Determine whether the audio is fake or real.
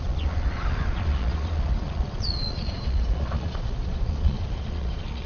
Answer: fake